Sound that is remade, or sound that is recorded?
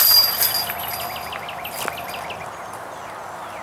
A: recorded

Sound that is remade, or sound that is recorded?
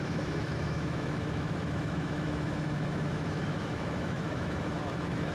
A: remade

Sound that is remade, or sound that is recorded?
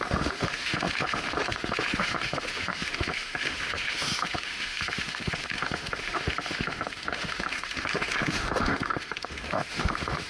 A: remade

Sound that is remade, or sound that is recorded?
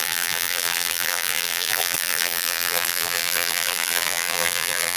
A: remade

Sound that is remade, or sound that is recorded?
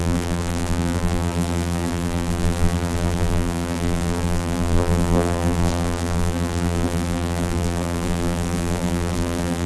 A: remade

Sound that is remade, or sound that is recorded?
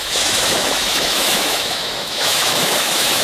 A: remade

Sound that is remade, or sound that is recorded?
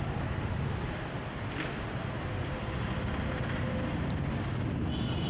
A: recorded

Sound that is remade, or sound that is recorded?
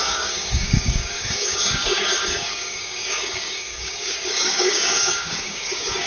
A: remade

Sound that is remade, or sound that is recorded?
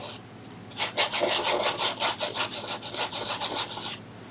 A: recorded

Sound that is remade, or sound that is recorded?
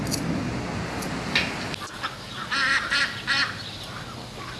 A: recorded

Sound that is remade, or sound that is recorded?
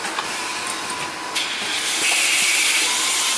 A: recorded